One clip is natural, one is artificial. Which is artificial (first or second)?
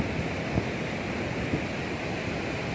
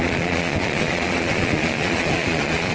second